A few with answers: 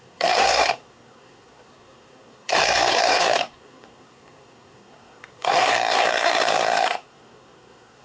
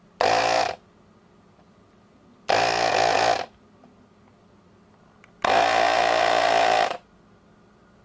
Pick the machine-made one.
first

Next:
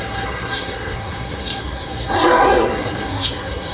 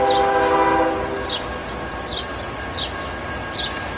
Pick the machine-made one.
first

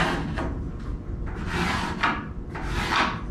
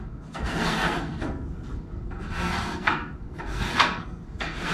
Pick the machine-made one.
second